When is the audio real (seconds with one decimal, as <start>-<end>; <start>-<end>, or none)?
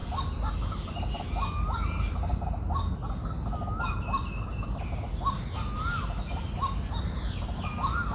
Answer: 0.0-8.1